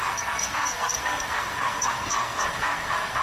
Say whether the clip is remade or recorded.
remade